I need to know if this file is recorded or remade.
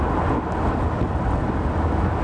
recorded